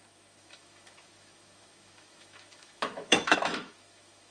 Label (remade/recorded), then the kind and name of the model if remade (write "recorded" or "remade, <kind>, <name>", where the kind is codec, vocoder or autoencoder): remade, autoencoder, DAC-VAE